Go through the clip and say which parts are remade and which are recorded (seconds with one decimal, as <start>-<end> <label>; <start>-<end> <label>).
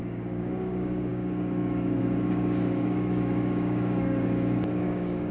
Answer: 0.0-5.3 remade